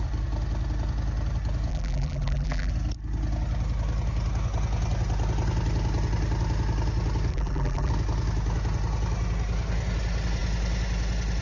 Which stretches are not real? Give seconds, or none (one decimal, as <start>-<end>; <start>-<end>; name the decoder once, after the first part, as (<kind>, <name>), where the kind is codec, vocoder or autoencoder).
1.7-2.7 (vocoder, BigVGAN v2); 7.3-7.9